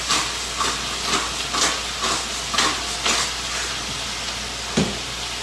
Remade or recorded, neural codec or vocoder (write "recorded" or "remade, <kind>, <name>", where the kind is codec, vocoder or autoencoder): recorded